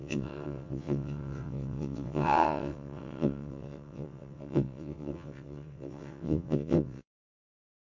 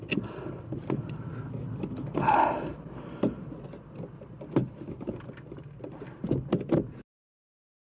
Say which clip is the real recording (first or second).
second